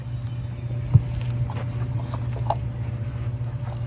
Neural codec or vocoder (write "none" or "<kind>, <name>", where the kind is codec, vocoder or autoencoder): none